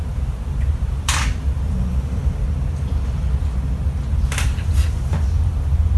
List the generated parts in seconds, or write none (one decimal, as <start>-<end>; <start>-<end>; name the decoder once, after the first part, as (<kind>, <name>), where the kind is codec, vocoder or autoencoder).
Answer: 0.0-2.2 (vocoder, BigVGAN v2); 4.9-6.0